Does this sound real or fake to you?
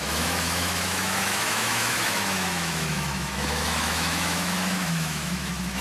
fake